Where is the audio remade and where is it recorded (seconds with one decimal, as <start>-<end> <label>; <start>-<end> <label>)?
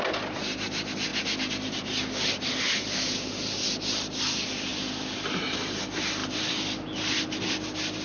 0.0-8.0 recorded